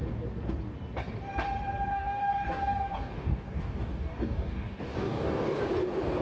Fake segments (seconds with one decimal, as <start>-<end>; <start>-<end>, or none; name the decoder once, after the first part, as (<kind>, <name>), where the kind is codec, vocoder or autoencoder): 1.9-5.6 (codec, DAC)